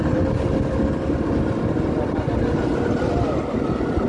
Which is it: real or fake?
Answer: real